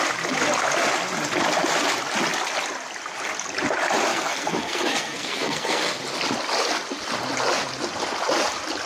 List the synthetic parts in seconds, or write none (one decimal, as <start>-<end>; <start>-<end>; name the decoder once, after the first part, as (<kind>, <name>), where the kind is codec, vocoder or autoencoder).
4.1-6.0 (codec, SNAC)